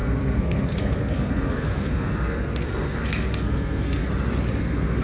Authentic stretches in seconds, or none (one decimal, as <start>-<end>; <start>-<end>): 4.0-4.6